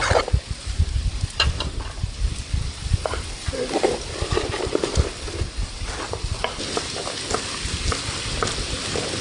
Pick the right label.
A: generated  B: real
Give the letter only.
A